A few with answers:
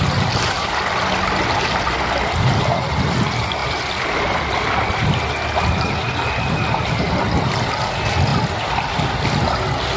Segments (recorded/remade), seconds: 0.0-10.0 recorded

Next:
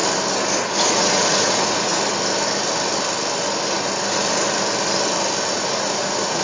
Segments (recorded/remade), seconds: 0.0-0.8 recorded; 0.8-1.9 remade; 1.9-5.5 recorded; 5.5-6.4 remade

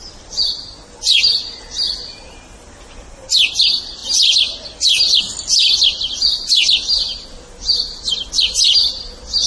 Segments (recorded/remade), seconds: 0.0-9.5 recorded

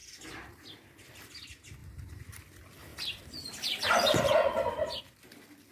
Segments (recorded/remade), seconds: 0.0-1.8 recorded; 1.8-2.4 remade; 2.4-2.9 recorded; 2.9-5.0 remade; 5.0-5.7 recorded

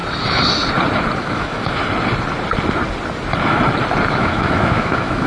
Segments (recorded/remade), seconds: 0.0-1.2 recorded; 1.2-1.8 remade; 1.8-4.1 recorded; 4.1-5.3 remade